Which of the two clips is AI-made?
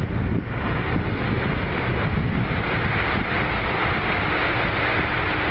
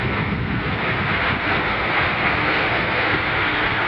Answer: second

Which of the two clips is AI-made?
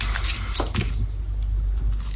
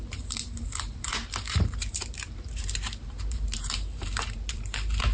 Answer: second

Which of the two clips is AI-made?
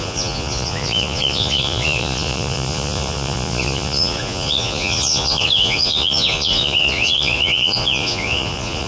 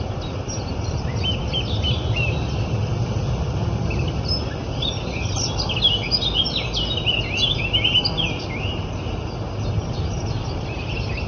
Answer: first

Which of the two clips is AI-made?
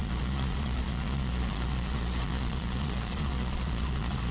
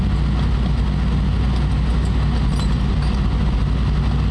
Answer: first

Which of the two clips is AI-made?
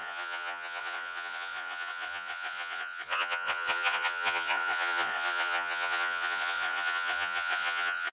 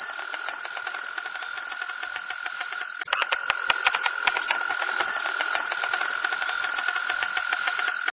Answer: first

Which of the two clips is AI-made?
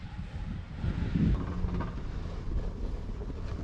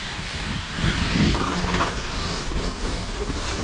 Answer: second